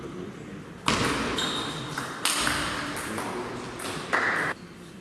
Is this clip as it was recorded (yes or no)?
yes